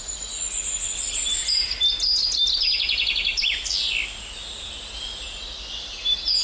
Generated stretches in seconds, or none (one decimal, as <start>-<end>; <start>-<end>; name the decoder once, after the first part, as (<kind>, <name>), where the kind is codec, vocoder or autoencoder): none